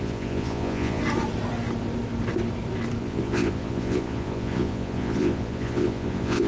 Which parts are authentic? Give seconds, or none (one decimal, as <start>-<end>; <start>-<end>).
1.0-3.0